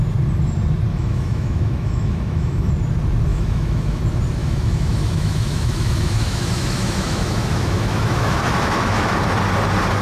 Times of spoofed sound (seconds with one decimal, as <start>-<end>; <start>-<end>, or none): 0.9-2.7; 3.3-4.0; 4.4-9.2

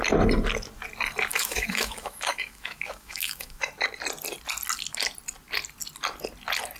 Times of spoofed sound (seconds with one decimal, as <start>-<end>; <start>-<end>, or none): 1.3-3.7

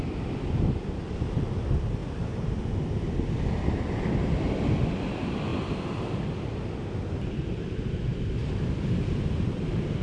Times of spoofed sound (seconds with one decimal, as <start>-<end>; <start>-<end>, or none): none